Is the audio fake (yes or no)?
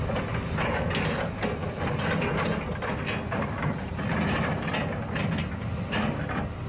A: no